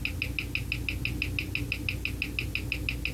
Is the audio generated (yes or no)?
no